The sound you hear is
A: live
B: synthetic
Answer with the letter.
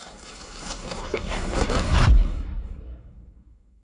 B